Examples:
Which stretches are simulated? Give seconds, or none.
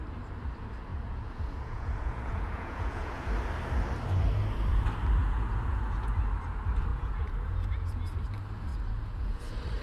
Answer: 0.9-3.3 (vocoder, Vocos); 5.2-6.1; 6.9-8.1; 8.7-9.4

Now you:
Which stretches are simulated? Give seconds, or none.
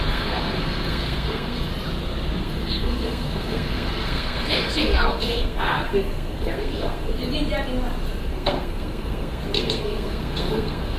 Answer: 0.0-1.7 (codec, SNAC); 2.4-7.2; 8.2-11.0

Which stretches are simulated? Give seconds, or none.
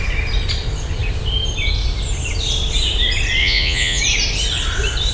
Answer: 3.4-4.0 (vocoder, Vocos)